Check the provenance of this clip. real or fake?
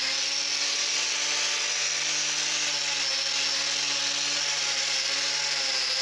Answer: real